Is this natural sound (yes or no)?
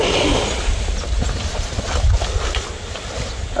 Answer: yes